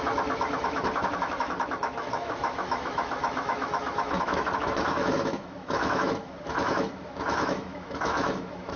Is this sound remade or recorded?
remade